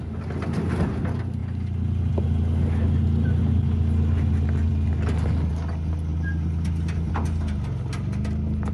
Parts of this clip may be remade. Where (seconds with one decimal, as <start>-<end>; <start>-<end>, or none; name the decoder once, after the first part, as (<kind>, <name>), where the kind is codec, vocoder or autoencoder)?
6.1-7.1 (vocoder, BigVGAN v2)